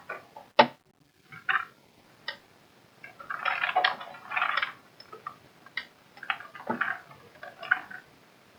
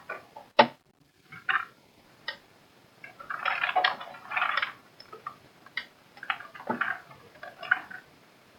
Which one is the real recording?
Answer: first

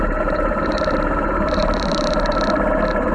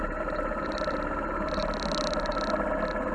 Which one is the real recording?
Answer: second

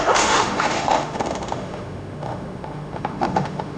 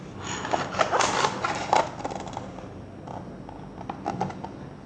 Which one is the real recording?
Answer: second